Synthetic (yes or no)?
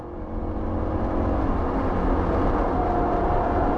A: no